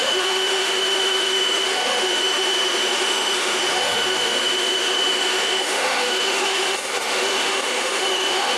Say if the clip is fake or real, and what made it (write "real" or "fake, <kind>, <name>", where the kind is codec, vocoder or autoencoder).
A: fake, autoencoder, DAC-VAE